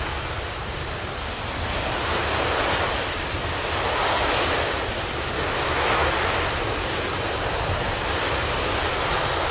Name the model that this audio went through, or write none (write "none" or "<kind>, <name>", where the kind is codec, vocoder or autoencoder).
none